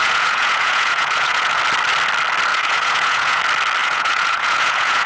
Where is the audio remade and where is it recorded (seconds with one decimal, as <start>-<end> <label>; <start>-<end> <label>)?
0.0-1.6 remade; 1.6-2.5 recorded; 2.5-3.4 remade; 3.4-3.8 recorded; 3.8-5.1 remade